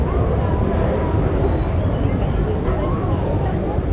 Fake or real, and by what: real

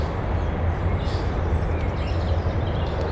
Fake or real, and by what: real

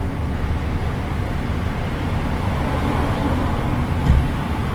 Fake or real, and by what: real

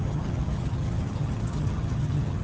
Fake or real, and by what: fake, vocoder, HiFi-GAN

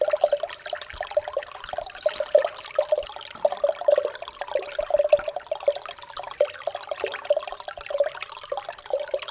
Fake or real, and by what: real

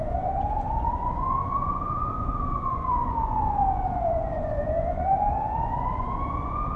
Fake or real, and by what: fake, vocoder, Vocos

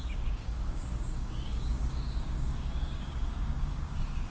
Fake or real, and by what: fake, codec, DAC